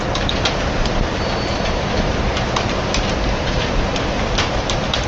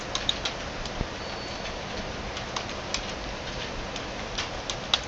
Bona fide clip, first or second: second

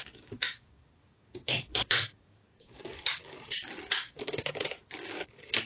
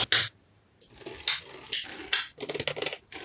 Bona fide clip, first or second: second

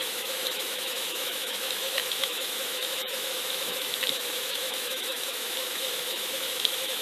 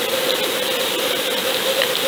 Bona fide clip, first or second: second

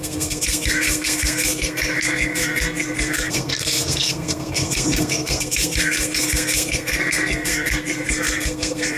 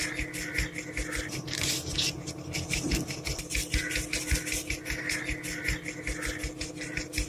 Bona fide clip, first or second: second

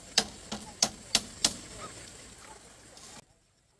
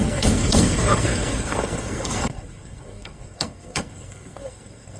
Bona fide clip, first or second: first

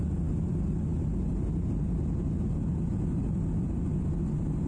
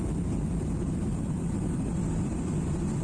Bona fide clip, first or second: first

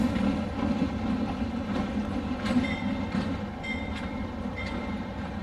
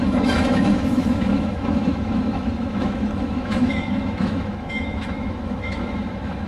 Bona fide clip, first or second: first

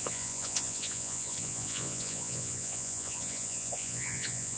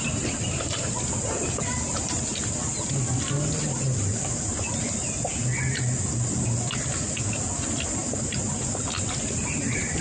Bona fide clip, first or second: second